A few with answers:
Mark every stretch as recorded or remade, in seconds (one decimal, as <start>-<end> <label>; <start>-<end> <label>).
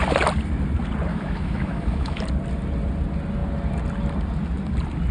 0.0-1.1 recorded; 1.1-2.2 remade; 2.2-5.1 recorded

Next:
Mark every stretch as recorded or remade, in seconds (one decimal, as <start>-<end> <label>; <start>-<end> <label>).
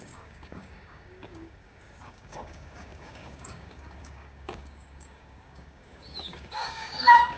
0.0-7.4 remade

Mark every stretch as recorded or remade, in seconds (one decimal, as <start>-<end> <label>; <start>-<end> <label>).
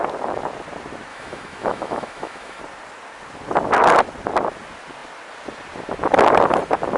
0.0-1.1 recorded; 1.1-2.6 remade; 2.6-7.0 recorded